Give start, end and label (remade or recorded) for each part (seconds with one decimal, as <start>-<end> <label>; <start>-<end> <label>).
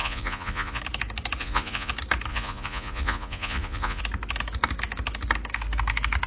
0.0-0.8 remade; 0.8-1.4 recorded; 1.4-1.9 remade; 1.9-2.3 recorded; 2.3-4.0 remade; 4.0-6.3 recorded